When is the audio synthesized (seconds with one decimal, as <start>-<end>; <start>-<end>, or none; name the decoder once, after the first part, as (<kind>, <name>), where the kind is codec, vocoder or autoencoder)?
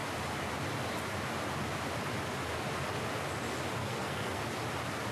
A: 3.8-4.4 (codec, SNAC)